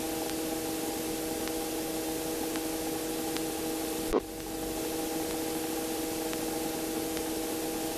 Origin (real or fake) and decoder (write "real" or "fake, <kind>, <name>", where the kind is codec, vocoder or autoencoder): real